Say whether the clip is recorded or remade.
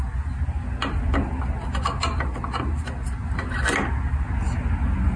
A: recorded